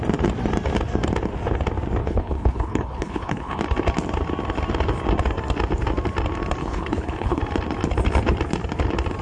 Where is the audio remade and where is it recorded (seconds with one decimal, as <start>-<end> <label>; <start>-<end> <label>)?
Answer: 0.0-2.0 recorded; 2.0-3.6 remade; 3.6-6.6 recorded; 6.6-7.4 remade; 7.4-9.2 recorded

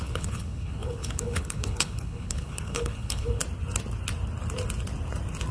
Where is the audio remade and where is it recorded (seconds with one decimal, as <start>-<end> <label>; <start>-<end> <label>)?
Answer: 0.0-3.4 remade; 3.4-5.5 recorded

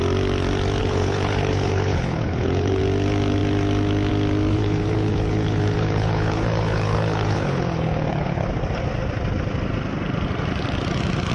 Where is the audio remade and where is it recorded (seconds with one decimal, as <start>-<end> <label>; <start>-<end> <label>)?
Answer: 0.0-0.8 recorded; 0.8-2.8 remade; 2.8-4.5 recorded; 4.5-8.5 remade; 8.5-11.3 recorded